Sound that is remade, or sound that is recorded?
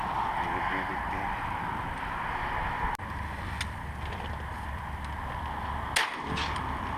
recorded